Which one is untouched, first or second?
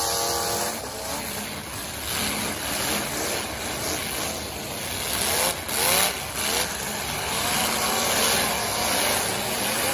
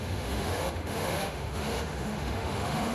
first